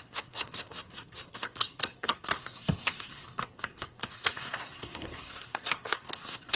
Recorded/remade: remade